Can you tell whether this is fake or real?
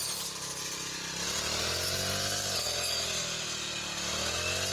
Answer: real